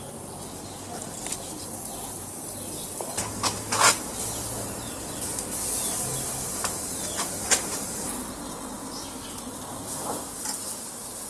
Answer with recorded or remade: recorded